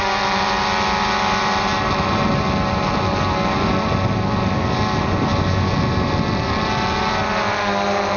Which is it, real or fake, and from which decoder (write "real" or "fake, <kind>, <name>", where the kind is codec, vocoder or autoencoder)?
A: real